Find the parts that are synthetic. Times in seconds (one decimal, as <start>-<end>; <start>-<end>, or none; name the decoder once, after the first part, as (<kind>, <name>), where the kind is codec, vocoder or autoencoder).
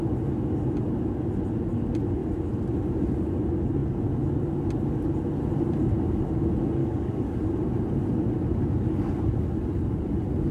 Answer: 6.8-7.4 (codec, DAC)